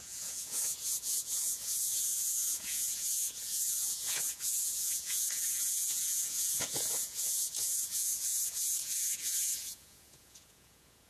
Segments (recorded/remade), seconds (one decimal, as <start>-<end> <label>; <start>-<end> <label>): 0.0-11.1 remade